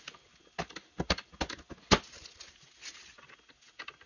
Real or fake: real